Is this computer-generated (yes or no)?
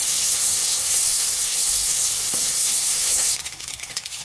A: yes